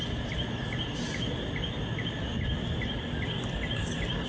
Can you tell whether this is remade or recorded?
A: recorded